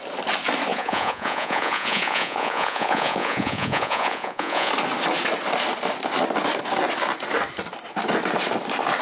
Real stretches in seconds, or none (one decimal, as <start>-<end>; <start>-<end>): 0.0-0.7; 4.7-9.0